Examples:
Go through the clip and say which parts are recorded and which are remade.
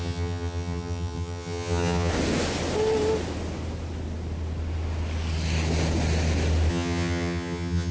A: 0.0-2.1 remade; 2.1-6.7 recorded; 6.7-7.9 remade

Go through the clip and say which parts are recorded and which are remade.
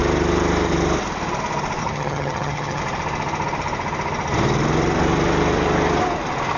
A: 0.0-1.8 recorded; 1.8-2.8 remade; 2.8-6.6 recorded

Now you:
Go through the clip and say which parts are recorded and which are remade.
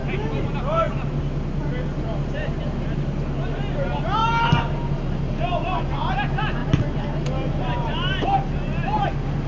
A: 0.0-9.5 recorded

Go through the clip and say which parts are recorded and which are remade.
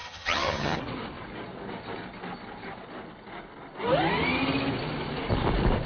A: 0.0-0.8 remade; 0.8-5.9 recorded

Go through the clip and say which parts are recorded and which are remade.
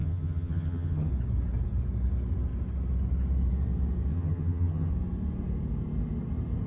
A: 0.0-1.1 remade; 1.1-4.1 recorded; 4.1-4.9 remade; 4.9-6.7 recorded